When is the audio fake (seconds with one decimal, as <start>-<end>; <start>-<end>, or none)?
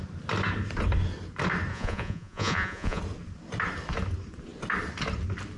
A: 1.7-3.0